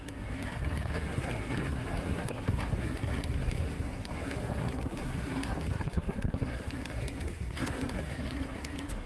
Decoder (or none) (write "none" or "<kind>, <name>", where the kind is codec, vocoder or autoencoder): codec, SNAC